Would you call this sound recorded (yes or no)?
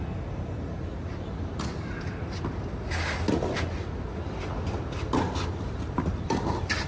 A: yes